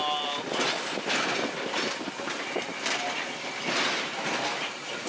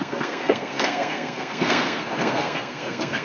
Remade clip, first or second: second